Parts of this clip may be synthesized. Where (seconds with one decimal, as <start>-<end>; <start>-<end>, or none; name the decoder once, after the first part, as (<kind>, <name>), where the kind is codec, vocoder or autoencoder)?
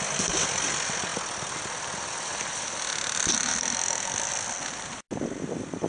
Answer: none